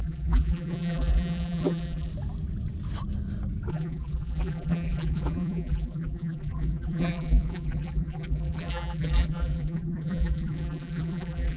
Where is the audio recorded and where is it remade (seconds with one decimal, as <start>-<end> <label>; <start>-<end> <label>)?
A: 0.0-2.1 remade; 2.1-3.7 recorded; 3.7-11.6 remade